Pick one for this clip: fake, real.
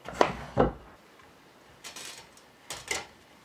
real